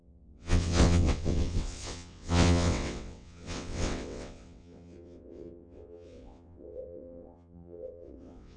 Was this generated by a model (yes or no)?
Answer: yes